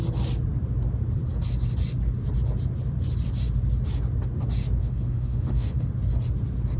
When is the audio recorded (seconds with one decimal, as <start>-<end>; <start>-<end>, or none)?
0.0-4.8; 5.9-6.8